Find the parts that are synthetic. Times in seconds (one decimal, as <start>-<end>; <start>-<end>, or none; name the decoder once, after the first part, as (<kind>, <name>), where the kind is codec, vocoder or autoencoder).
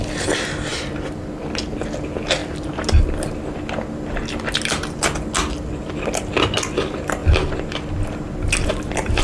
none